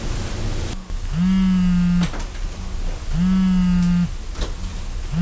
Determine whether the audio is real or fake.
real